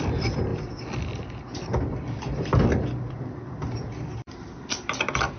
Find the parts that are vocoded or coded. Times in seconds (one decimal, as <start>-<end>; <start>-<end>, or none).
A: 0.0-5.4